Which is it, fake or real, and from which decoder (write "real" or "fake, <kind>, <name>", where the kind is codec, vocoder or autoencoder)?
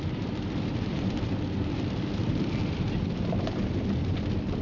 fake, vocoder, BigVGAN v2